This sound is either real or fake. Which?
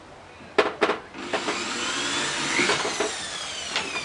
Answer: real